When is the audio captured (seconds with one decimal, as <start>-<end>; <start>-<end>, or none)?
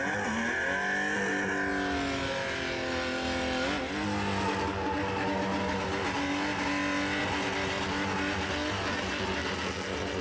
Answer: 0.0-10.2